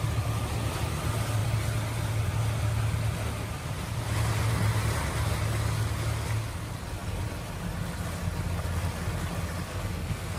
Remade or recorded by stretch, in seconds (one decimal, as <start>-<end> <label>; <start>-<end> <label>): 0.0-9.7 recorded; 9.7-10.4 remade